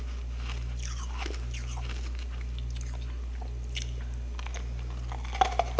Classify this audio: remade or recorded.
recorded